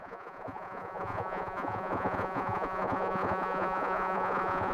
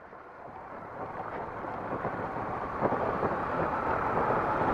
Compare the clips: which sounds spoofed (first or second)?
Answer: first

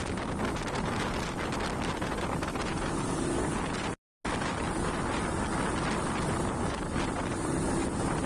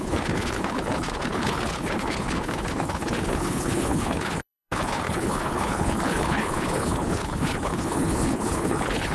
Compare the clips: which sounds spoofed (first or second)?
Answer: second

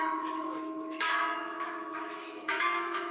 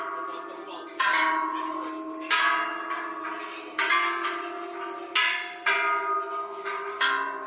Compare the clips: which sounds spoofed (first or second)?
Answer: first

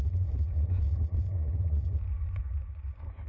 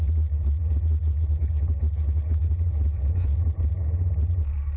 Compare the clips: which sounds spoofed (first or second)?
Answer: first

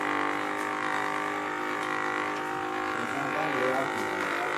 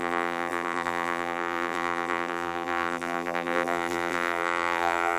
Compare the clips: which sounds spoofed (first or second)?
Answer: second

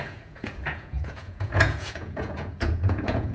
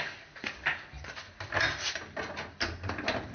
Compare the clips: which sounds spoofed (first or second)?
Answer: first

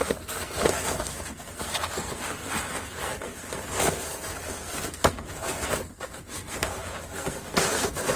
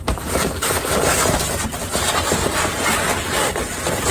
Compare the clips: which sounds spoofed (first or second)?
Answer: first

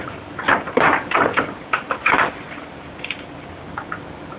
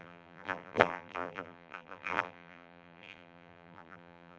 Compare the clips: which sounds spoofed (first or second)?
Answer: second